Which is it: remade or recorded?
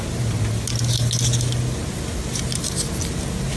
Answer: recorded